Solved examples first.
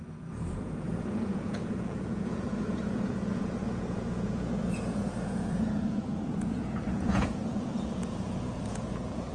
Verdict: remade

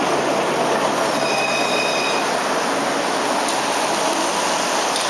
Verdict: recorded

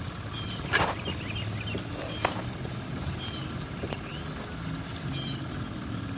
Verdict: recorded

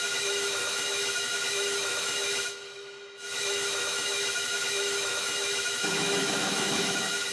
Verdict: remade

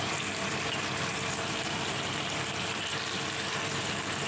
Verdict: recorded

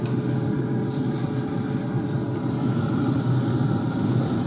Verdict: recorded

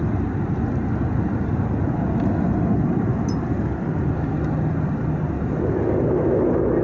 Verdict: recorded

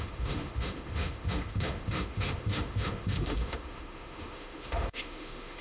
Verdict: remade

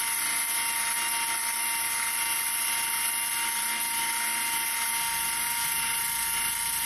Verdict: recorded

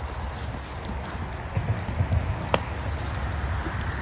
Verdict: recorded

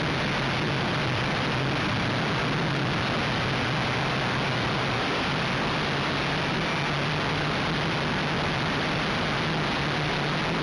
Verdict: recorded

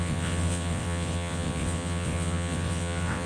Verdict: remade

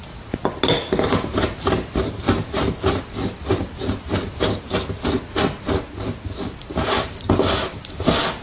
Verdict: recorded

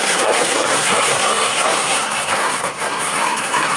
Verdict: remade